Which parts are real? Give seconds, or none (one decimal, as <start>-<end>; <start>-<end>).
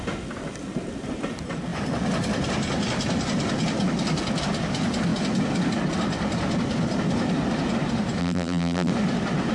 0.0-8.2; 8.9-9.5